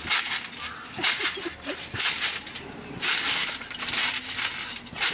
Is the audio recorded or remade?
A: recorded